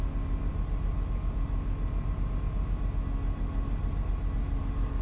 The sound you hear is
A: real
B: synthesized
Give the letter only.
A